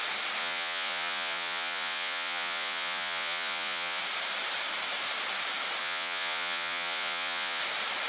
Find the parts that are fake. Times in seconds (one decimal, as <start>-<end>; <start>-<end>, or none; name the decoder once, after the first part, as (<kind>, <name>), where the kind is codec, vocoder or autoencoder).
0.4-4.0 (vocoder, Vocos); 5.8-7.6

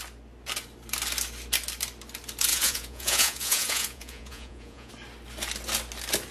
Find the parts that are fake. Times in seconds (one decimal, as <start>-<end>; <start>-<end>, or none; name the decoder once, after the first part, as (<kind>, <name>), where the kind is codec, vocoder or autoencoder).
2.5-4.9 (vocoder, Vocos)

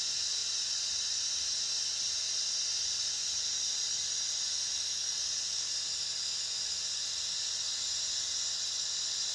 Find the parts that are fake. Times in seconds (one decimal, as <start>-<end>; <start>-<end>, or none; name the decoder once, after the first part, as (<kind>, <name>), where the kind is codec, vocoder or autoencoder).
none

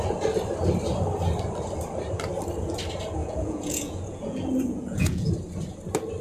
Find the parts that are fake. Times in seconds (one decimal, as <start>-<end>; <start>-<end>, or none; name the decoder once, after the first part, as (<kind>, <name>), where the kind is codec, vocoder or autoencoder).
3.2-5.3 (vocoder, Vocos)

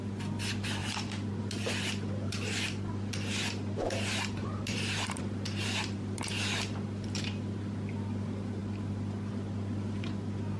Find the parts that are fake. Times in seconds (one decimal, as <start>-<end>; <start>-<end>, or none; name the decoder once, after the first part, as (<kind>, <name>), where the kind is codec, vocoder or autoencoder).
4.4-5.2 (vocoder, BigVGAN v2)